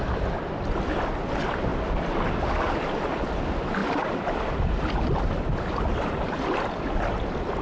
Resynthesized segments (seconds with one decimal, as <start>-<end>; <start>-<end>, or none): none